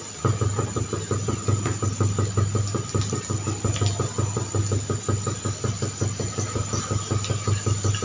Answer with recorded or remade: recorded